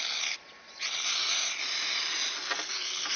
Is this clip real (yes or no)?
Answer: yes